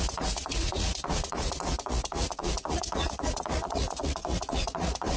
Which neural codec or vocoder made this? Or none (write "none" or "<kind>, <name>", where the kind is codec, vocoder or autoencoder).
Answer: vocoder, Vocos